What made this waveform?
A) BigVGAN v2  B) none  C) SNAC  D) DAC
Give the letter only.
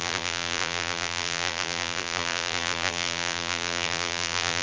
A